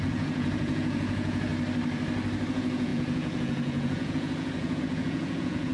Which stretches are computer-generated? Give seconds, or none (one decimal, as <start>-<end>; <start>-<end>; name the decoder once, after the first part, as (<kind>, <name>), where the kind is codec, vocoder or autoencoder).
0.0-1.5 (vocoder, Vocos); 2.5-5.7